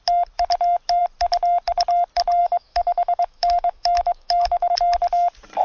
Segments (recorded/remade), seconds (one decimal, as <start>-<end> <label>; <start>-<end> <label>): 0.0-2.4 recorded; 2.4-4.7 remade; 4.7-5.6 recorded